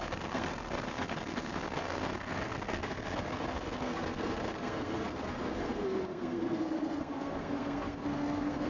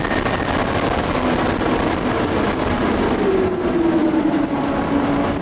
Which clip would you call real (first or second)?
second